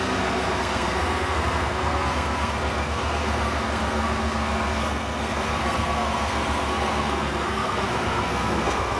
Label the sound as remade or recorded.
remade